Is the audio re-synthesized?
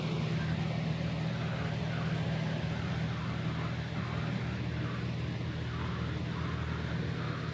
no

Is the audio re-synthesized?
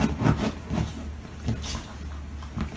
no